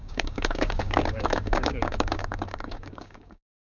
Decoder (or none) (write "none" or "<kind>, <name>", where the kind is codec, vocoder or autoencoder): codec, DAC